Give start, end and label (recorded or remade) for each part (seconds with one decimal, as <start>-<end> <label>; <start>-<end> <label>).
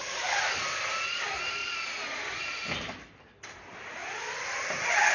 0.0-5.1 recorded